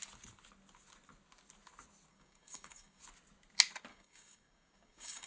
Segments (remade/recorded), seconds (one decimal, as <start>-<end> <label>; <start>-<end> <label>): 0.0-2.1 recorded; 2.1-3.0 remade; 3.0-3.9 recorded; 3.9-5.3 remade

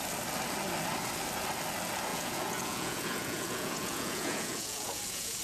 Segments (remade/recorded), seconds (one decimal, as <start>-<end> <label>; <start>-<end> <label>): 0.0-2.1 recorded; 2.1-5.4 remade

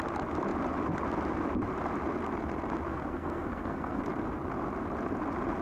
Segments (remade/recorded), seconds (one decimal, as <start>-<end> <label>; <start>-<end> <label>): 0.0-2.9 recorded; 2.9-4.0 remade; 4.0-5.6 recorded

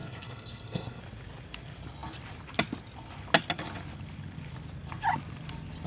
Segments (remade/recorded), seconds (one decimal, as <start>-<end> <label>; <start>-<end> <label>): 0.0-1.0 remade; 1.0-5.9 recorded

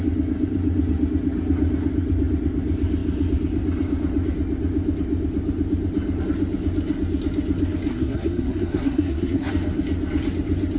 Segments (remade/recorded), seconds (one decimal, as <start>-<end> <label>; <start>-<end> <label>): 0.0-7.9 recorded; 7.9-9.5 remade; 9.5-10.8 recorded

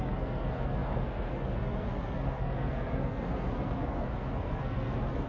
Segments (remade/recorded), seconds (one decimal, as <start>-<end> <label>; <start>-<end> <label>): 0.0-5.3 remade